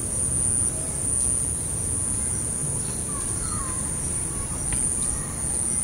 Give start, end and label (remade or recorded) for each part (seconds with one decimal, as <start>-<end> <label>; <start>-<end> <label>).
0.0-5.8 recorded